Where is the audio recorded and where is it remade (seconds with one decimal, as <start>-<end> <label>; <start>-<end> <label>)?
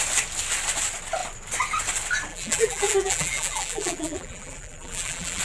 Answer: 0.0-2.3 recorded; 2.3-5.4 remade